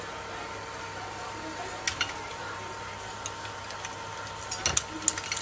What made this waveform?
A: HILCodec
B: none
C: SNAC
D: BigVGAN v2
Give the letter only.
B